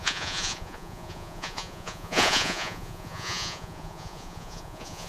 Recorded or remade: remade